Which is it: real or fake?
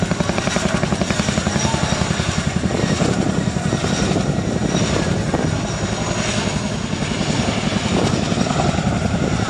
real